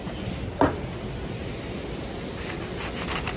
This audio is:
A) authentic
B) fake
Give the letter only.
A